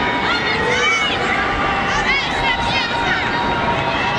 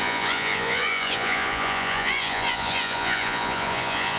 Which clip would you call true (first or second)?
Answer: first